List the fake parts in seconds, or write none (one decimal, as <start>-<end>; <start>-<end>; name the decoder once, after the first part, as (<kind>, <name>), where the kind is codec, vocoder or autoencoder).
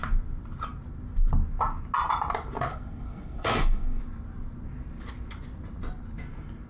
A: 2.7-4.0 (codec, SNAC)